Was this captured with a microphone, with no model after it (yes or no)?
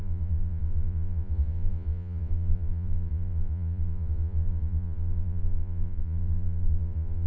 no